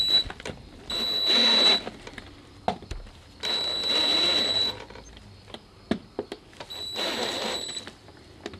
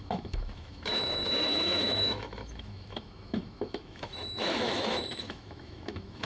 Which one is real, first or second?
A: first